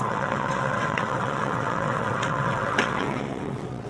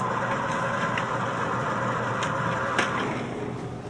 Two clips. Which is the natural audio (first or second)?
second